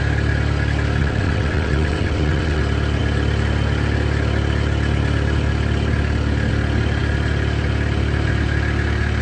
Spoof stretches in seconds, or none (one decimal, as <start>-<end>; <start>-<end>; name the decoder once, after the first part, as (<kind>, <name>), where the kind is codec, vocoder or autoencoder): 1.0-2.6 (vocoder, WaveNeXt)